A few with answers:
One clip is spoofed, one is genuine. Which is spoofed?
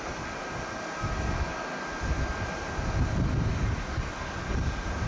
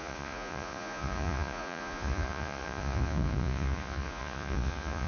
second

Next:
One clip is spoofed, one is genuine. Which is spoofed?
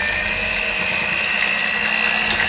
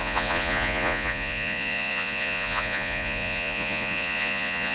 second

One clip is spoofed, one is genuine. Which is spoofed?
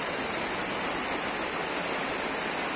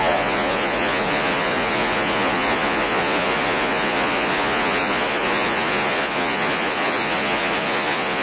second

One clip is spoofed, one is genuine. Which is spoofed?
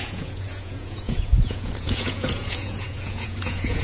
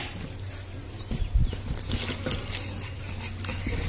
first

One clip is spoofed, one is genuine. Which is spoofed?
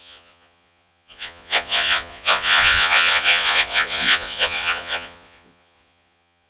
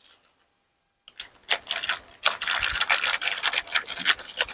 first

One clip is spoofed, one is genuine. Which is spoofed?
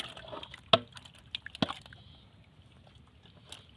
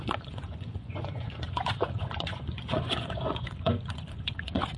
second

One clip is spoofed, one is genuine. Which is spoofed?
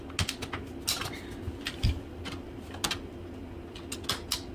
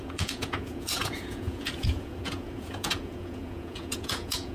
second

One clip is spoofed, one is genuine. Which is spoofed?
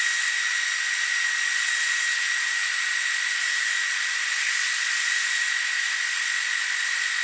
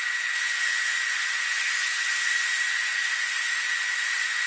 second